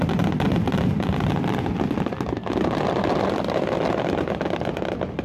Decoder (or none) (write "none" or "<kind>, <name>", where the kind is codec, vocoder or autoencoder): none